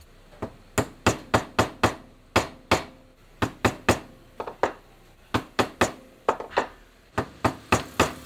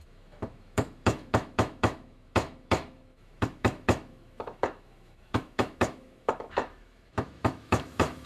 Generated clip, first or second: second